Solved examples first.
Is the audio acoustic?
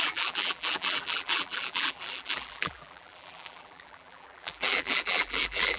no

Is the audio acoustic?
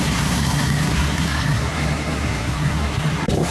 no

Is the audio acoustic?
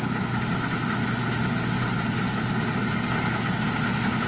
yes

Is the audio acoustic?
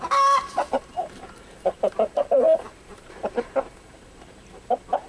no